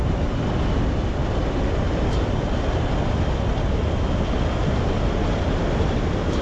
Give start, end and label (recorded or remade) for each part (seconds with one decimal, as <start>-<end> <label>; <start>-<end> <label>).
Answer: 0.0-6.4 recorded